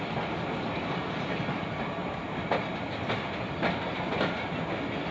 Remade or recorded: recorded